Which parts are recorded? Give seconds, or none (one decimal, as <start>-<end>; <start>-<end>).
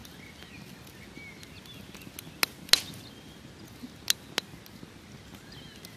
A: 0.0-6.0